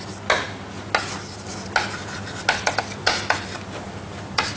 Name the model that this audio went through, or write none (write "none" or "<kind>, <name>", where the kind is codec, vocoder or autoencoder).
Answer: none